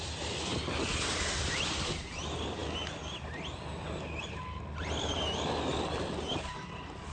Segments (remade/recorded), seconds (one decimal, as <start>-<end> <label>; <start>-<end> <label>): 0.0-0.5 recorded; 0.5-1.9 remade; 1.9-7.1 recorded